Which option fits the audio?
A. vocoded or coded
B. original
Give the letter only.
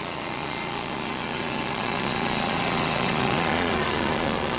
A